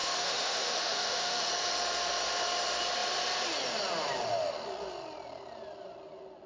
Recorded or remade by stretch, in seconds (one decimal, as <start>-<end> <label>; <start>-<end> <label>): 0.0-1.5 remade; 1.5-6.5 recorded